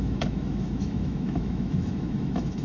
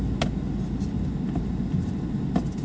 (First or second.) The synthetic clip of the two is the first